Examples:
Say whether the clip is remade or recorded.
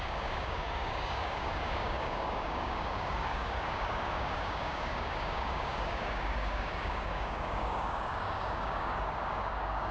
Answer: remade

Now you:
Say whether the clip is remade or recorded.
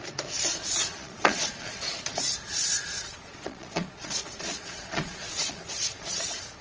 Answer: remade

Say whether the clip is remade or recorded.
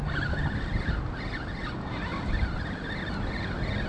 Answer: recorded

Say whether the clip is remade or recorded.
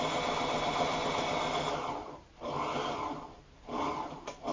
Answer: recorded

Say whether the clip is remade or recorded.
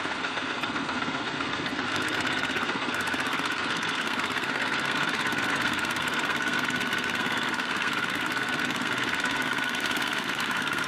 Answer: remade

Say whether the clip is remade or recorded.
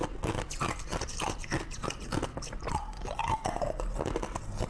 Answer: recorded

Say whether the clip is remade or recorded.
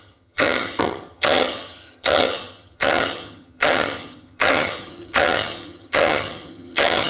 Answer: remade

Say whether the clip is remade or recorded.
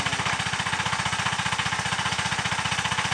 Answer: recorded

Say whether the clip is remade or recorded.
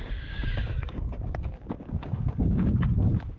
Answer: remade